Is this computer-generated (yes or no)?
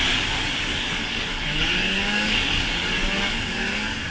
yes